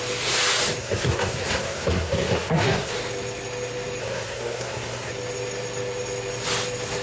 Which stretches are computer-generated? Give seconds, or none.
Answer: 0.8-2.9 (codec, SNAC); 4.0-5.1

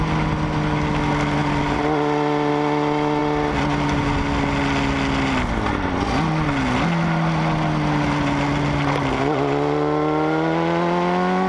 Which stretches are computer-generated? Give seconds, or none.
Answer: none

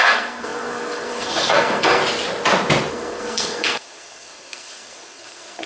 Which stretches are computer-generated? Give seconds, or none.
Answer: 0.0-2.0 (codec, SNAC); 2.9-5.7

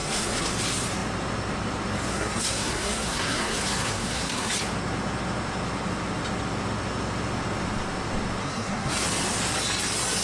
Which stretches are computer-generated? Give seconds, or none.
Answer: 0.0-0.5 (codec, SNAC); 2.1-4.5; 8.4-8.9

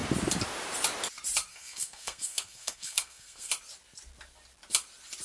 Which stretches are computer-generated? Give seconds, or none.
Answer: 1.5-3.5 (codec, SNAC)

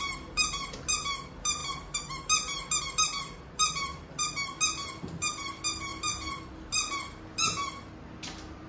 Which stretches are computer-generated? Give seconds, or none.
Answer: none